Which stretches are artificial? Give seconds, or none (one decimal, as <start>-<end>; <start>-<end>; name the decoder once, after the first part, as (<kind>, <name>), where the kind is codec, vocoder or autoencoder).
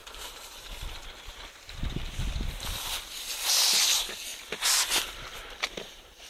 none